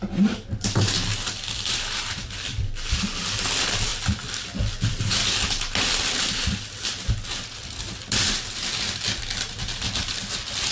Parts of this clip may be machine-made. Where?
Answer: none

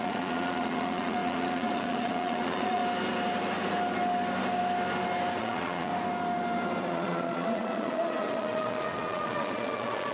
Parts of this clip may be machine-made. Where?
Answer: 0.0-2.8 (vocoder, Vocos); 5.4-5.9; 6.8-10.1

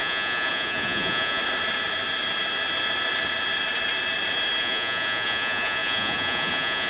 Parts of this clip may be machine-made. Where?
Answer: 0.0-1.4 (vocoder, Vocos); 4.6-6.9

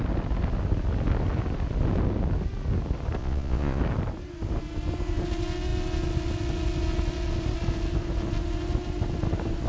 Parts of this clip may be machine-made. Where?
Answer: 3.2-3.8 (vocoder, Vocos)

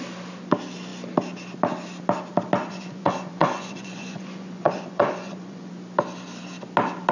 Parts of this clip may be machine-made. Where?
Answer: 2.7-5.7 (vocoder, Vocos)

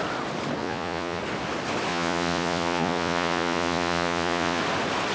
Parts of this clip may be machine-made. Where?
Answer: 0.6-1.2 (vocoder, Vocos); 1.9-4.6